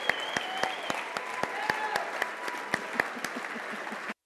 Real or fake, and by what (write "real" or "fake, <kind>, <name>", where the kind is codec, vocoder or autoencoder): real